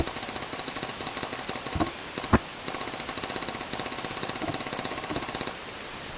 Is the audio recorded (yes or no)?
yes